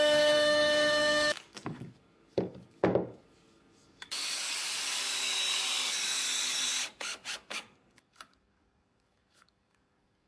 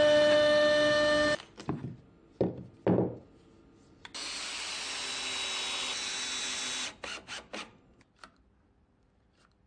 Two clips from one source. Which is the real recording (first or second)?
second